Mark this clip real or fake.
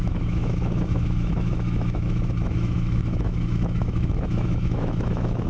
fake